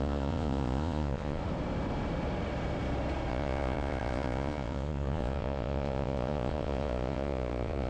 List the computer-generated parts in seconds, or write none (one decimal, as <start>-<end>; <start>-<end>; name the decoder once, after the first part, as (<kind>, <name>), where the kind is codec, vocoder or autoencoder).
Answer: 0.0-1.4 (vocoder, Vocos); 3.3-7.9